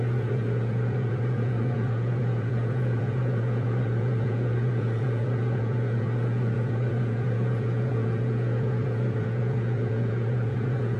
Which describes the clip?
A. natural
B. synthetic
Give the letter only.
B